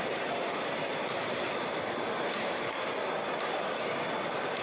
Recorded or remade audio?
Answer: remade